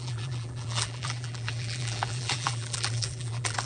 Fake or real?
fake